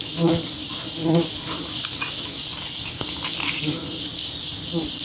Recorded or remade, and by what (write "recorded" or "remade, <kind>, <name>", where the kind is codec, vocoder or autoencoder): recorded